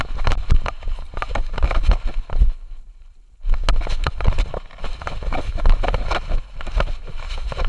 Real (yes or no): yes